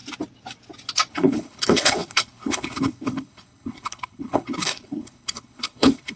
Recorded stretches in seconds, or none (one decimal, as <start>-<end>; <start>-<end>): 0.0-1.1